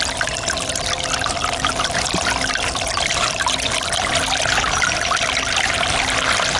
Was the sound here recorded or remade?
recorded